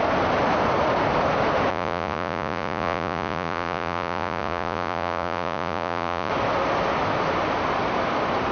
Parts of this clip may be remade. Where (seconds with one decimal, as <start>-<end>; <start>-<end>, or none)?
1.7-6.3